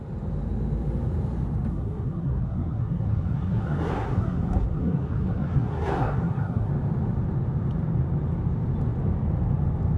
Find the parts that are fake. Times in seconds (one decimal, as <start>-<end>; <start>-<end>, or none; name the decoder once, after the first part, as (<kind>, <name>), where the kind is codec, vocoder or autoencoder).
1.7-6.7 (codec, SNAC)